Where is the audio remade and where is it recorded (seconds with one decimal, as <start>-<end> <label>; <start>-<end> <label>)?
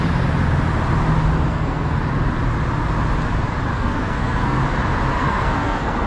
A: 0.0-1.5 recorded; 1.5-2.0 remade; 2.0-3.7 recorded; 3.7-4.6 remade; 4.6-5.1 recorded; 5.1-6.1 remade